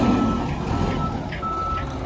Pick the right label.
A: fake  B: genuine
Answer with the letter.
B